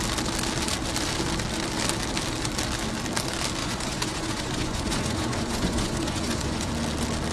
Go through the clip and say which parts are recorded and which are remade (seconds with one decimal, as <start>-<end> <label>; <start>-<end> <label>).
0.0-3.6 recorded; 3.6-6.7 remade; 6.7-7.3 recorded